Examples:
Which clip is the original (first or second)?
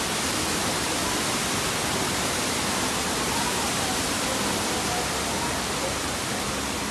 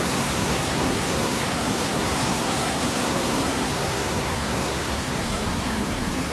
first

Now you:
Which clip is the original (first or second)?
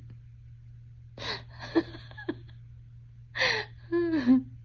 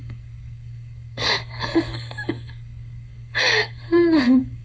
first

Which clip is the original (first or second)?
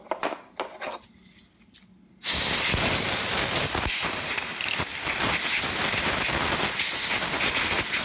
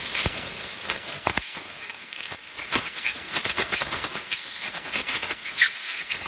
first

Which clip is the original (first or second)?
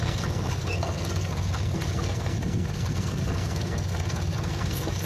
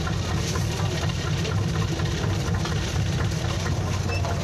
second